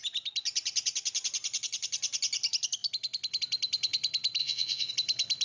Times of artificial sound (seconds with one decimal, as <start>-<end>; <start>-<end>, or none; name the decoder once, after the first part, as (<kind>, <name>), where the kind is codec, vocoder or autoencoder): 4.4-4.9 (vocoder, Vocos)